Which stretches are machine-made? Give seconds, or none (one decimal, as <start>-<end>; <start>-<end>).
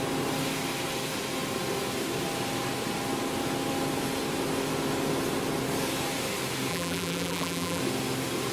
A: 6.7-7.8